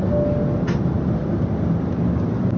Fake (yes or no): no